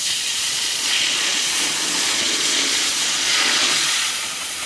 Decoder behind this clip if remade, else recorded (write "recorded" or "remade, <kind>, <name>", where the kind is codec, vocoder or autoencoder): remade, vocoder, Vocos